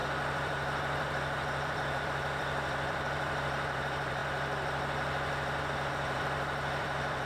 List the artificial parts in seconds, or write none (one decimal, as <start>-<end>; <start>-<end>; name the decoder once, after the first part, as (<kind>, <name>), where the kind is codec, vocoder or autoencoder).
0.0-4.2 (vocoder, BigVGAN v2); 5.9-7.3